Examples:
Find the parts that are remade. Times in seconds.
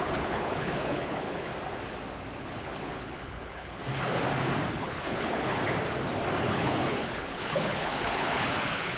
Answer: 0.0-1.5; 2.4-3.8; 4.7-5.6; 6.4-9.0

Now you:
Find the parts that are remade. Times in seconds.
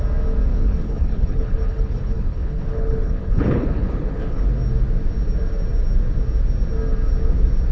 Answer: 0.5-4.4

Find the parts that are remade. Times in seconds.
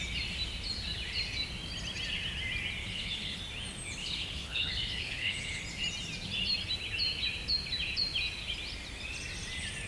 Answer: 2.8-3.4; 4.0-5.6